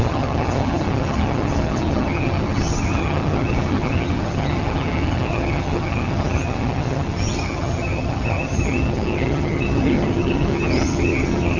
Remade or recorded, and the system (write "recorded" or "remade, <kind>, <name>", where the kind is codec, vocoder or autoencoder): remade, vocoder, HiFi-GAN